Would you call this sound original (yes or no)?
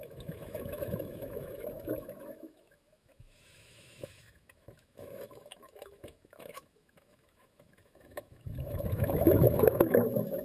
no